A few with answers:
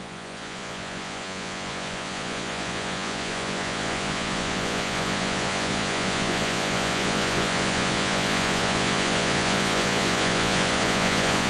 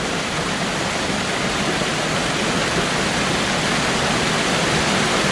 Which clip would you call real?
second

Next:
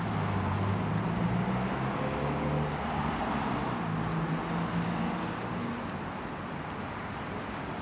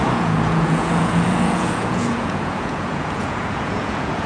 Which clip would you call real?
first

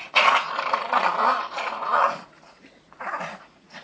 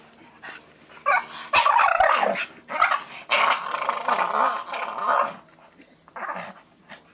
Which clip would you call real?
second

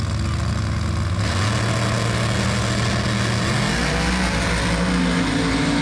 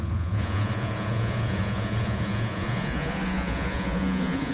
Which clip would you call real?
first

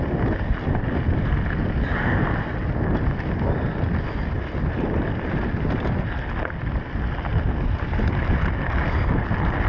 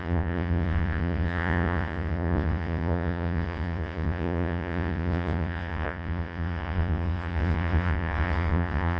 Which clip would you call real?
first